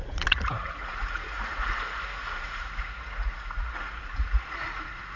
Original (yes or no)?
no